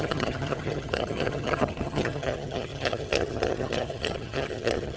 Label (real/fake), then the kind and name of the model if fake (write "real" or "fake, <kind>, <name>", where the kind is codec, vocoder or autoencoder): fake, vocoder, HiFi-GAN